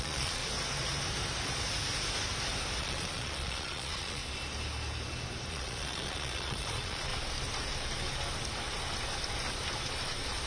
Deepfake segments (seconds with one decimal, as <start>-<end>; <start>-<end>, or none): 0.0-0.4; 2.8-4.2; 5.5-7.1